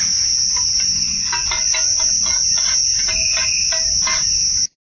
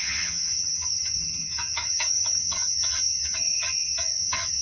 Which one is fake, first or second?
second